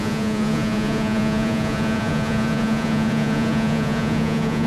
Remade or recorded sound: remade